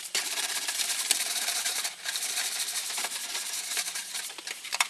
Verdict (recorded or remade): remade